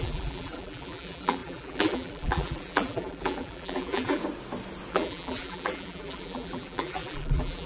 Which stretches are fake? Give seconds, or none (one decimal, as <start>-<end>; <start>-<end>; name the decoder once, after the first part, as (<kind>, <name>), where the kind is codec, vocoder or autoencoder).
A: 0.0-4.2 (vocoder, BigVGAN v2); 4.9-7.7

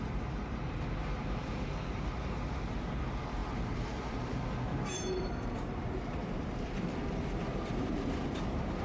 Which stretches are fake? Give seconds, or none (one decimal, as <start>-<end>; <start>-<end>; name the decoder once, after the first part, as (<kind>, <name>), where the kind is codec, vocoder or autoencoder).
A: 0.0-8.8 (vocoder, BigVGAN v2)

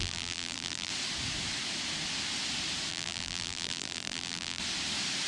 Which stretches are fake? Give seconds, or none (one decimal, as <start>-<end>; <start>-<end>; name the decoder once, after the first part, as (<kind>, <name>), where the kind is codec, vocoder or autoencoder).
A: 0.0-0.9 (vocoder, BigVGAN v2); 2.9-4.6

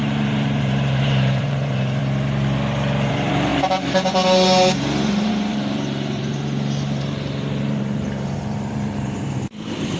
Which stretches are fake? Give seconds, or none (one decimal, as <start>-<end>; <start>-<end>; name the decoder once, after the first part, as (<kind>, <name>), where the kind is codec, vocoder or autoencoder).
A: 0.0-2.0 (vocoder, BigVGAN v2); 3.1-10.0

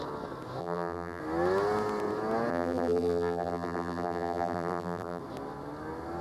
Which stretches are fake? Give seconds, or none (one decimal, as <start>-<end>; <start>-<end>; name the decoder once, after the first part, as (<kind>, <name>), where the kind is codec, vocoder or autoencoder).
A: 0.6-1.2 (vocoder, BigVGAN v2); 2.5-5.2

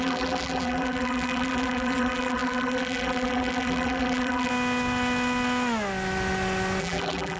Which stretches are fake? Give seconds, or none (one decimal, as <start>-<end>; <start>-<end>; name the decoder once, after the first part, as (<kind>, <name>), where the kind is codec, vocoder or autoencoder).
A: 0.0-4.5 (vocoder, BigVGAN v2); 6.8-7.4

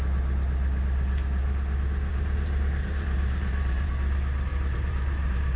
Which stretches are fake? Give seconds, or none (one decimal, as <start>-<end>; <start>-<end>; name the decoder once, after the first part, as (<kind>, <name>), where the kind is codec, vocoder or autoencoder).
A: 2.1-3.9 (vocoder, BigVGAN v2); 4.5-5.6

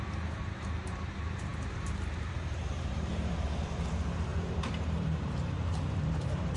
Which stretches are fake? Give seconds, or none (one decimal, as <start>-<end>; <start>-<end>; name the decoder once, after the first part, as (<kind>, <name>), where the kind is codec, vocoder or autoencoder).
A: 0.0-6.6 (vocoder, BigVGAN v2)